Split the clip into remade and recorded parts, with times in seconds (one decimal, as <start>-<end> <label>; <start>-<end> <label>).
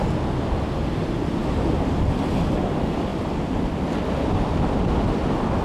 0.0-5.6 recorded